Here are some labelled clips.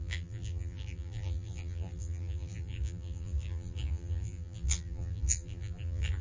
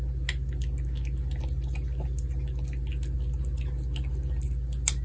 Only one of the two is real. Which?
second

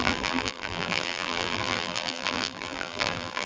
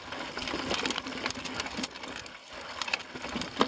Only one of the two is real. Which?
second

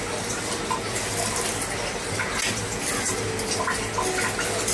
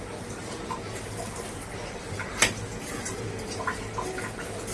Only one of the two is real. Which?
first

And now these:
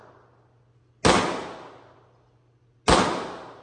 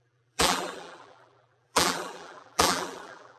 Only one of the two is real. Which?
first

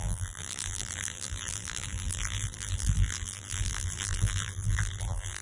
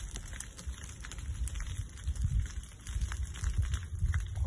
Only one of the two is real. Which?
second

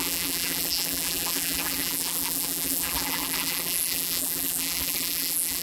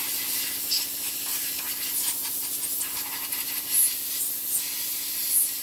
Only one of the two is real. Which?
second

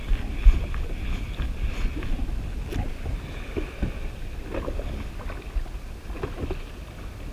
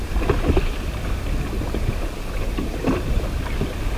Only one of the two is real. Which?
first